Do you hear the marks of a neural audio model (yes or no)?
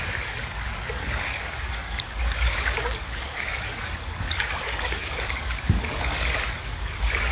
yes